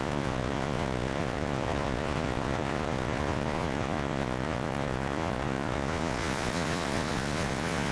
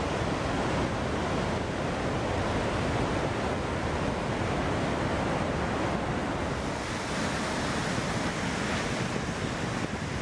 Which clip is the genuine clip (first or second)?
second